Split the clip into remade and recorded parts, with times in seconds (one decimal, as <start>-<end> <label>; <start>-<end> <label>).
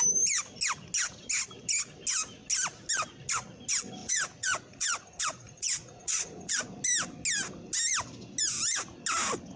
0.0-4.0 recorded; 4.0-6.6 remade; 6.6-9.6 recorded